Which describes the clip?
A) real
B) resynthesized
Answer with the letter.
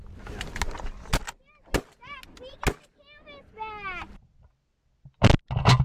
A